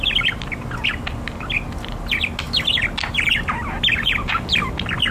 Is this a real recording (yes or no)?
yes